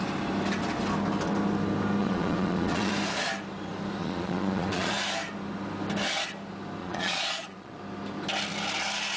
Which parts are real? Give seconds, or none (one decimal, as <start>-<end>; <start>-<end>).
0.0-2.0; 2.9-4.0; 4.9-6.8; 7.8-9.2